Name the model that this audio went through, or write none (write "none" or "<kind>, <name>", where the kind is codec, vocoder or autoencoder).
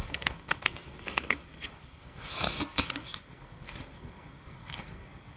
codec, SNAC